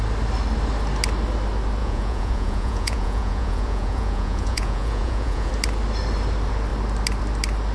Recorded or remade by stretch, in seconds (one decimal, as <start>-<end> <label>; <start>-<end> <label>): 0.0-1.8 recorded; 1.8-5.5 remade; 5.5-7.7 recorded